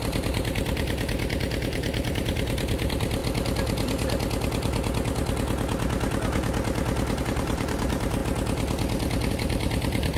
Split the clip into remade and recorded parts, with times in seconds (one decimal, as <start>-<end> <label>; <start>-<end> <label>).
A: 0.0-3.2 remade; 3.2-7.2 recorded; 7.2-8.2 remade; 8.2-9.3 recorded; 9.3-10.2 remade